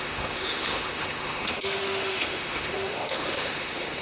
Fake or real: fake